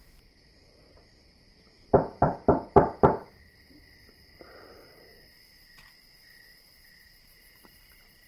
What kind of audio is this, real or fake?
fake